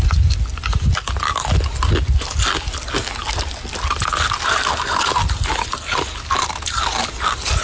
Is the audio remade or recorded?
recorded